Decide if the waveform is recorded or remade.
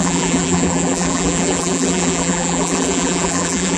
remade